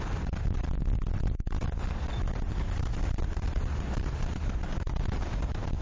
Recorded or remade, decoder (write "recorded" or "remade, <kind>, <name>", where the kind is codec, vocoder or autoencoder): recorded